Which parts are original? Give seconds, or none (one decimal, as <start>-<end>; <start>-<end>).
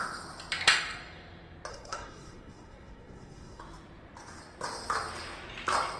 0.0-1.7; 3.6-6.0